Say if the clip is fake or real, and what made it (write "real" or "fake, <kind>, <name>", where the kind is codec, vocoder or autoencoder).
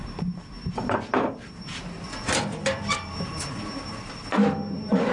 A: fake, vocoder, BigVGAN v2